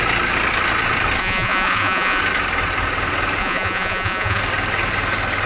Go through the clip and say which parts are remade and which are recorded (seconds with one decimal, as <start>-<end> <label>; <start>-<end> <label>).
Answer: 0.0-1.2 recorded; 1.2-2.2 remade; 2.2-3.4 recorded; 3.4-4.4 remade; 4.4-5.5 recorded